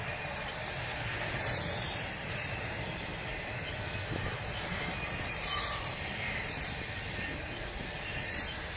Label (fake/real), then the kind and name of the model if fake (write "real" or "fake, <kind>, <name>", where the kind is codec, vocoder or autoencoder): fake, vocoder, BigVGAN v2